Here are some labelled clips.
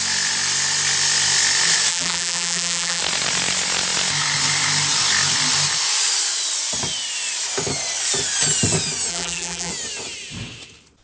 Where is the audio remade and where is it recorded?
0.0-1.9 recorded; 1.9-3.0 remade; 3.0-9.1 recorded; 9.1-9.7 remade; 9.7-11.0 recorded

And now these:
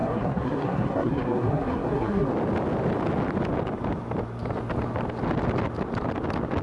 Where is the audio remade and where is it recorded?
0.0-2.3 remade; 2.3-6.6 recorded

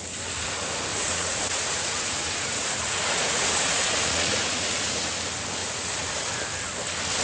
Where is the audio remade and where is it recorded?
0.0-0.9 recorded; 0.9-5.1 remade; 5.1-5.6 recorded; 5.6-6.3 remade; 6.3-7.2 recorded

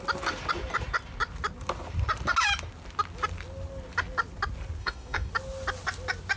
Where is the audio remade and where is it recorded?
0.0-4.8 recorded; 4.8-5.3 remade; 5.3-6.4 recorded